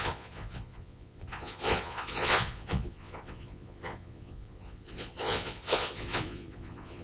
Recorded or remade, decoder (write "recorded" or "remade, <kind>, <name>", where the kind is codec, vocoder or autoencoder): remade, vocoder, Vocos